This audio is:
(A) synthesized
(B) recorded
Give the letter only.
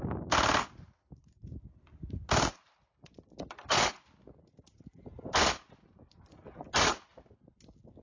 B